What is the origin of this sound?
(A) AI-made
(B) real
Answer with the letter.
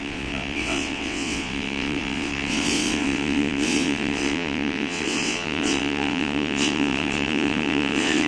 A